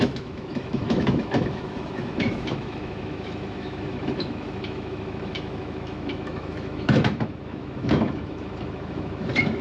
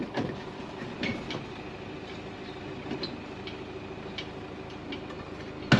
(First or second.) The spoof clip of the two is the first